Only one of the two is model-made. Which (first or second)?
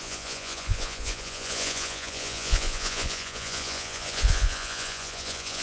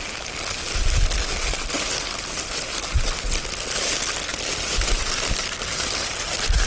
first